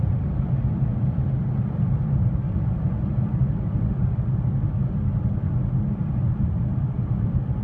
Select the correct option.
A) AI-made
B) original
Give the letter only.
B